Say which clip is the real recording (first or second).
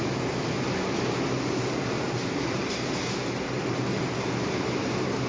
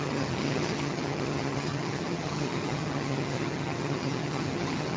first